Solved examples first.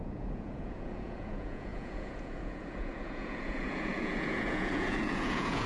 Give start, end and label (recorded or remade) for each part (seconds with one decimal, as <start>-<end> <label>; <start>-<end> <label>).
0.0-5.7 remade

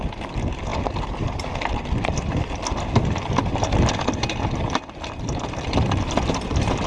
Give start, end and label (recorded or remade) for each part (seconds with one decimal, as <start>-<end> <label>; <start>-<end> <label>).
0.0-6.9 recorded

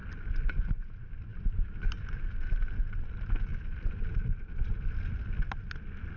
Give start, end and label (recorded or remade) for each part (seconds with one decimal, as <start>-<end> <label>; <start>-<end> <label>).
0.0-6.2 recorded

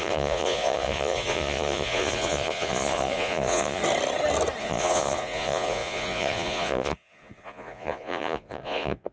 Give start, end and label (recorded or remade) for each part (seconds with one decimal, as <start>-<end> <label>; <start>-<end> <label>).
0.0-3.8 remade; 3.8-4.6 recorded; 4.6-9.1 remade